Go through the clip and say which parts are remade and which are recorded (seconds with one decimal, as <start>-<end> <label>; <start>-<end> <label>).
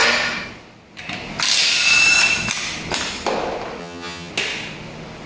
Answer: 0.0-3.8 recorded; 3.8-4.3 remade; 4.3-5.3 recorded